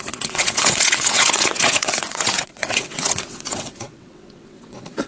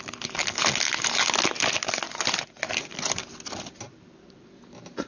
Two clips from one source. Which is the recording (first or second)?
second